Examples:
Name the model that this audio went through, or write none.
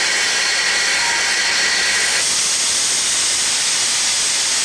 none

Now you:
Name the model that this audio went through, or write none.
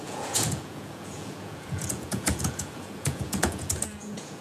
vocoder, Vocos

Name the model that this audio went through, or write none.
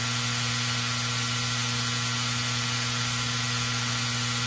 none